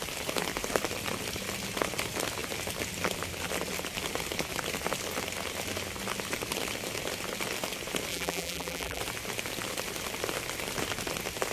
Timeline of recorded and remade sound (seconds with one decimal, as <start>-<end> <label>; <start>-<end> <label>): 0.0-8.1 recorded; 8.1-9.0 remade; 9.0-11.5 recorded